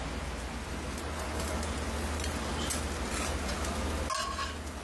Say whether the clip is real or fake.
real